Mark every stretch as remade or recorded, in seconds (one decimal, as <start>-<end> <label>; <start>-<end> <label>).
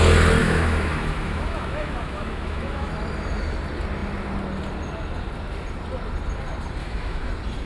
0.0-0.4 recorded; 0.4-2.9 remade; 2.9-6.8 recorded; 6.8-7.3 remade; 7.3-7.7 recorded